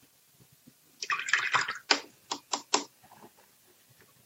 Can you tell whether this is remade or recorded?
recorded